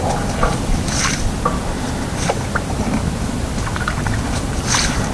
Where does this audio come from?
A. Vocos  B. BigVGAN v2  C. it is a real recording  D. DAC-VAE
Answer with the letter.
C